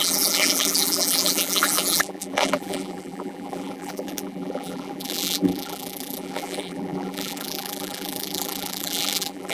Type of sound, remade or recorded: remade